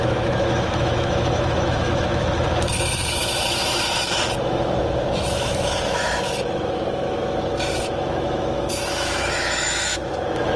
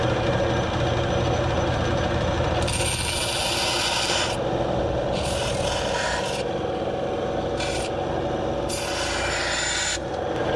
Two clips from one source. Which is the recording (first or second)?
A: second